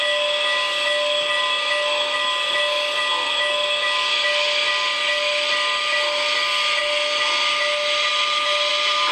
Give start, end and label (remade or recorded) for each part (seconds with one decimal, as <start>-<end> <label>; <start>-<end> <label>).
0.0-9.1 recorded